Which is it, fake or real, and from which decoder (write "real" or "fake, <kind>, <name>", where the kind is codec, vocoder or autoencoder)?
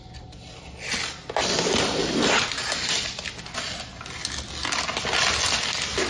real